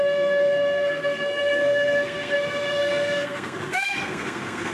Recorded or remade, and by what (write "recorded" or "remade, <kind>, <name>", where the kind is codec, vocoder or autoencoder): remade, codec, SNAC